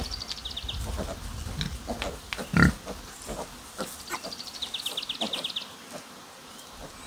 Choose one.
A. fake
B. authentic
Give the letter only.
B